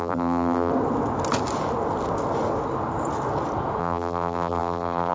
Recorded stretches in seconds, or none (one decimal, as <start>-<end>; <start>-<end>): 0.7-3.8